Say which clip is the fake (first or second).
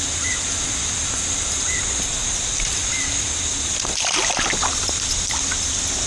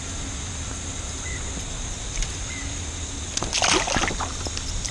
first